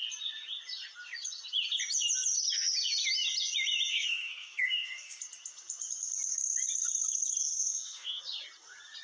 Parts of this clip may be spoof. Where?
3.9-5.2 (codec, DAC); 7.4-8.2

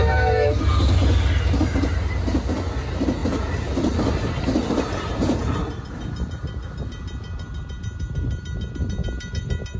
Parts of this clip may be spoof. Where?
0.0-0.6 (autoencoder, DAC-VAE)

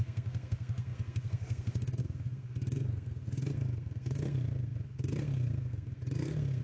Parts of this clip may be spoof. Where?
0.0-6.6 (codec, SNAC)

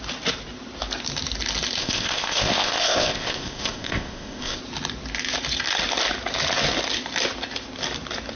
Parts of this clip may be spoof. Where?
1.8-4.6 (codec, ZipCodec)

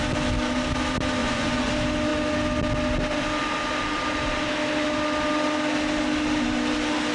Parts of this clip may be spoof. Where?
1.2-1.7 (vocoder, Vocos)

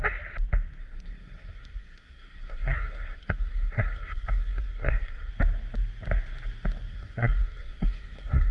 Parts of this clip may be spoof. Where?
0.8-5.3 (codec, SNAC); 6.9-8.5

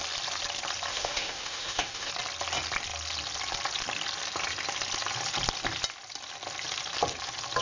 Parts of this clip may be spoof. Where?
0.9-2.1 (autoencoder, DAC-VAE)